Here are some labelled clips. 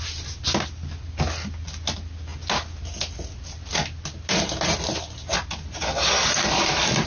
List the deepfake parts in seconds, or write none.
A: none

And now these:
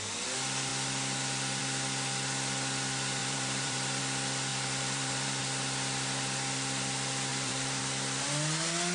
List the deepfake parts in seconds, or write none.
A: 3.2-4.0 (vocoder, BigVGAN v2); 4.5-5.4; 7.3-7.8

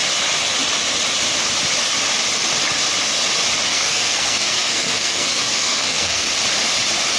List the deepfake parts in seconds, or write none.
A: 3.7-6.3 (codec, SNAC)

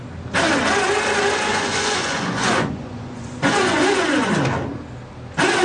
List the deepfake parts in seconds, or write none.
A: 1.5-4.3 (vocoder, Vocos)

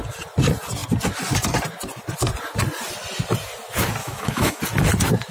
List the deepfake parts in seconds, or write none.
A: 4.0-4.6 (autoencoder, DAC-VAE)

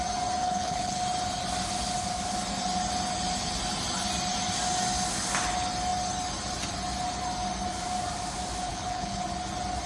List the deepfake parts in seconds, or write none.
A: 0.4-1.0 (codec, HILCodec); 8.7-9.2